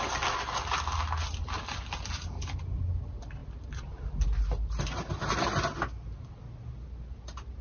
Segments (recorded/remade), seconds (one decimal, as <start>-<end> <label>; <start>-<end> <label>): 0.0-7.6 recorded